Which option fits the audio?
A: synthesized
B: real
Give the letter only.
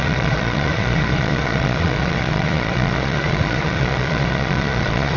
A